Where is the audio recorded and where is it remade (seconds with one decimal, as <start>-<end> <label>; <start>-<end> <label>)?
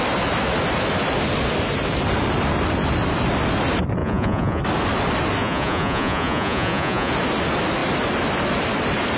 0.0-4.0 recorded; 4.0-4.6 remade; 4.6-5.4 recorded; 5.4-7.1 remade; 7.1-9.2 recorded